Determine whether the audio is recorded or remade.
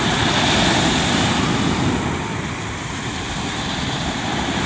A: recorded